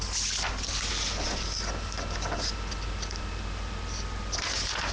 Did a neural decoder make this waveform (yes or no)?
no